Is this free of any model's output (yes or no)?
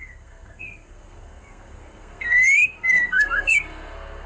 no